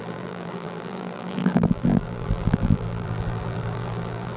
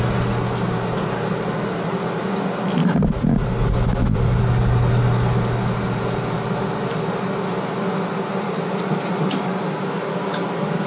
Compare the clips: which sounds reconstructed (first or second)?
first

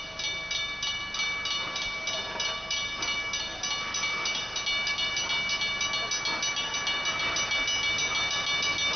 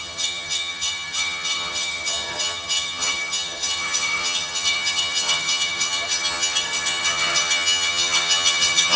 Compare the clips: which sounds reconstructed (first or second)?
second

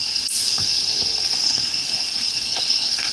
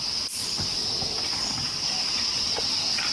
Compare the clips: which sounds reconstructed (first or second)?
first